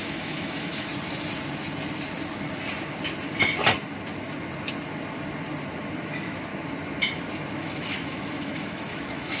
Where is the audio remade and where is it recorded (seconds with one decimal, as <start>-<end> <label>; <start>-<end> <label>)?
0.0-0.9 remade; 0.9-6.1 recorded; 6.1-6.5 remade; 6.5-7.5 recorded; 7.5-9.4 remade